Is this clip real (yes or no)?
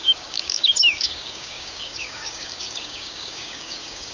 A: no